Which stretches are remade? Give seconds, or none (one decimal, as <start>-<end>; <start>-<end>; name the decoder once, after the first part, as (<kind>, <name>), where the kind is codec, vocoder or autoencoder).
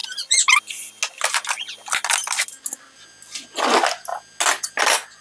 none